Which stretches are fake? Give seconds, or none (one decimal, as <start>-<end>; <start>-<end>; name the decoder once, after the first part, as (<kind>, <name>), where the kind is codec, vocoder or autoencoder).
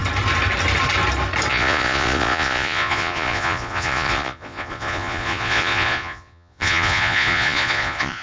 1.5-8.2 (vocoder, Vocos)